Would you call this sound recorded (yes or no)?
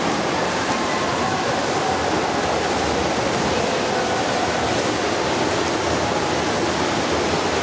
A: yes